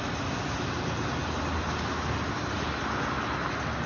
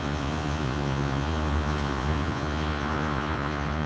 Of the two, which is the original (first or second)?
first